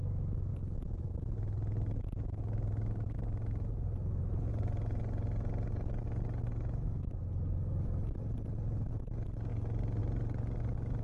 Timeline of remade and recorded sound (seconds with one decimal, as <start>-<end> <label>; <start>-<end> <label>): 0.0-6.5 recorded; 6.5-7.2 remade; 7.2-11.0 recorded